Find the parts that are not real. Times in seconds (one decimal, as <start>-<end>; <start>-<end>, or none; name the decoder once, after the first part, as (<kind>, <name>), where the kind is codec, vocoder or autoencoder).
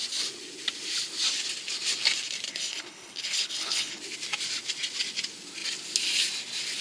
2.5-4.0 (codec, HILCodec)